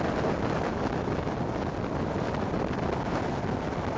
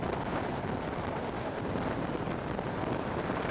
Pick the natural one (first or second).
first